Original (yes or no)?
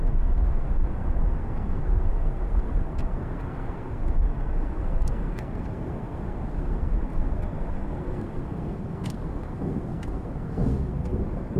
no